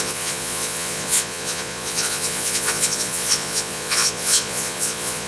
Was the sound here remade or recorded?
remade